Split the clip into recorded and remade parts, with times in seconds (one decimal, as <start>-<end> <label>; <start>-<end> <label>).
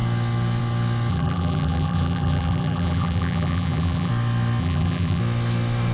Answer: 0.0-1.1 recorded; 1.1-4.1 remade; 4.1-4.6 recorded; 4.6-5.2 remade; 5.2-5.9 recorded